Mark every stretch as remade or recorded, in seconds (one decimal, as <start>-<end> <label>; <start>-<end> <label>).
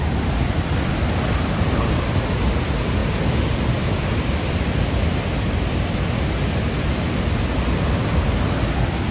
0.0-9.1 recorded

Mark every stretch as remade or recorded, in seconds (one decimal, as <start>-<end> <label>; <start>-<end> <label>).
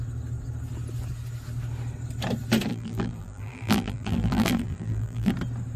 0.0-2.7 recorded; 2.7-5.3 remade; 5.3-5.8 recorded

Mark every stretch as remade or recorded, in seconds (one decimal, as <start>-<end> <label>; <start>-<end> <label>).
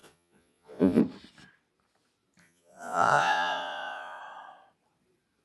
0.0-1.0 remade; 1.0-2.4 recorded; 2.4-4.2 remade; 4.2-5.4 recorded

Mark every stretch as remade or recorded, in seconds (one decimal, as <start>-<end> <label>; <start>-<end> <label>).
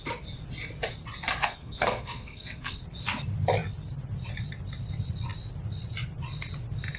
0.0-1.4 recorded; 1.4-2.8 remade; 2.8-7.0 recorded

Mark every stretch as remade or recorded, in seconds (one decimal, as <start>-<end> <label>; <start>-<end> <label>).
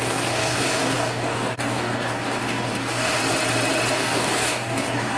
0.0-3.2 remade; 3.2-3.9 recorded; 3.9-5.2 remade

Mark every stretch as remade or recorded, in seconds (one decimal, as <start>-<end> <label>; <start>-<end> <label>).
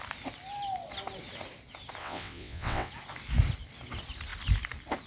0.0-2.0 recorded; 2.0-2.9 remade; 2.9-5.1 recorded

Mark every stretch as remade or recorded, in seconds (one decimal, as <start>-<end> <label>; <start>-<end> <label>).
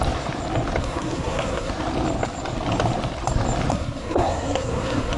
0.0-0.8 recorded; 0.8-1.7 remade; 1.7-3.7 recorded; 3.7-5.2 remade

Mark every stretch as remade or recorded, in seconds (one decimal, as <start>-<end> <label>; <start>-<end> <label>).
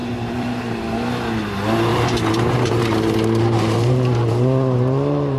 0.0-0.6 remade; 0.6-1.9 recorded; 1.9-5.4 remade